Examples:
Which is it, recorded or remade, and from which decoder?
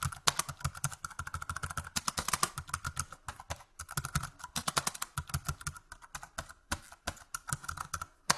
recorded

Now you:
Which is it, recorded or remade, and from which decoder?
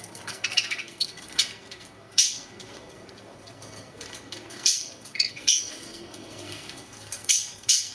remade, codec, SNAC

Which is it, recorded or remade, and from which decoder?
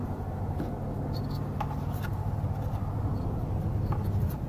recorded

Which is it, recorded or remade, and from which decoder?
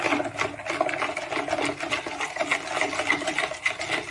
recorded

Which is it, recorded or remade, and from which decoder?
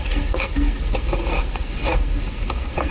remade, codec, SNAC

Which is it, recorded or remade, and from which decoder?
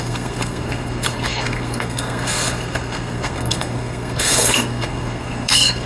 remade, codec, SNAC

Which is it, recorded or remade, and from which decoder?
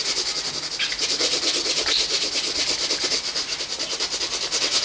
recorded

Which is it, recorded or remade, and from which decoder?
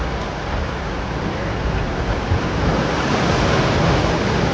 recorded